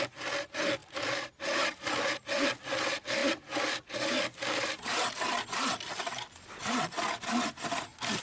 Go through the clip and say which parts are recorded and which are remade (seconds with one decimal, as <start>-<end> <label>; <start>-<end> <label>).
0.0-8.2 recorded

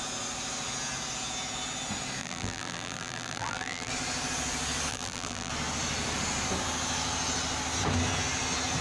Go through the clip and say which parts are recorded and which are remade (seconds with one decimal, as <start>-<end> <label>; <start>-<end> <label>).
0.0-2.2 recorded; 2.2-3.9 remade; 3.9-4.9 recorded; 4.9-5.5 remade; 5.5-8.8 recorded

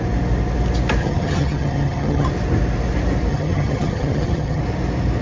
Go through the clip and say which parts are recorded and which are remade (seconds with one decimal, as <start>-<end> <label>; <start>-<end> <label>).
0.0-1.0 recorded; 1.0-2.3 remade; 2.3-3.3 recorded; 3.3-4.6 remade; 4.6-5.2 recorded

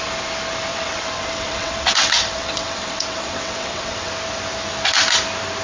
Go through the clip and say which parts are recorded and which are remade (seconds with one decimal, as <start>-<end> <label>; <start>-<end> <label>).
0.0-0.7 recorded; 0.7-4.1 remade; 4.1-5.6 recorded

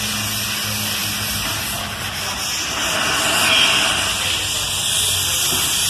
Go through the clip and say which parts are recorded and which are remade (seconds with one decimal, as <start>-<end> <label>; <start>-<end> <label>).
0.0-5.9 recorded

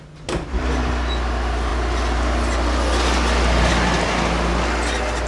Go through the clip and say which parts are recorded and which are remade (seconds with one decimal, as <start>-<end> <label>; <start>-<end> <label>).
0.0-5.3 recorded